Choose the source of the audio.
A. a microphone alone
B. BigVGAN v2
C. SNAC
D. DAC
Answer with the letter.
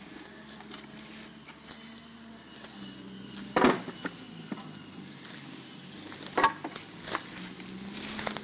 A